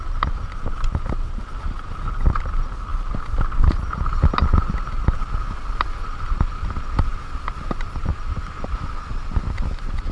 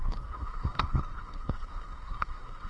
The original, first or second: first